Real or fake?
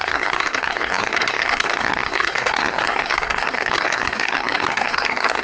fake